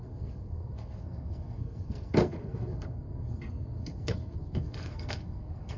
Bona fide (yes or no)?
no